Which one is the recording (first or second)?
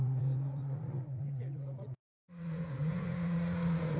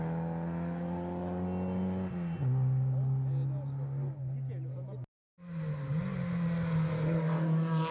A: second